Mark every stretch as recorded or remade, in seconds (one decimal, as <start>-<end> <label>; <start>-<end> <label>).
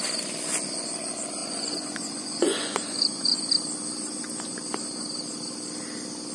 0.0-1.4 recorded; 1.4-3.5 remade; 3.5-6.3 recorded